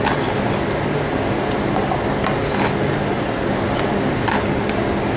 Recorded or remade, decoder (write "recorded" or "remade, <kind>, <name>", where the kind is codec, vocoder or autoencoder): recorded